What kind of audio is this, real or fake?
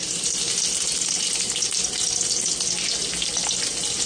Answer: real